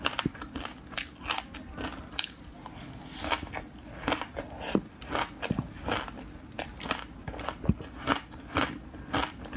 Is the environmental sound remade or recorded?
recorded